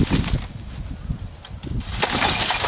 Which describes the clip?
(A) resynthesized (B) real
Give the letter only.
B